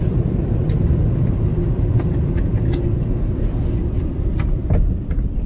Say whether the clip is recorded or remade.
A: remade